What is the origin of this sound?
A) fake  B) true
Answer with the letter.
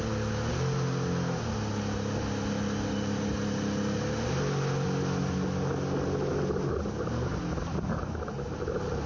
B